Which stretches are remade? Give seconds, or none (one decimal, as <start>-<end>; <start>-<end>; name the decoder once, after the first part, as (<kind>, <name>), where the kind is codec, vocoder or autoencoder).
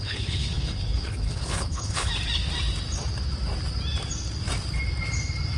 0.0-2.1 (codec, HILCodec)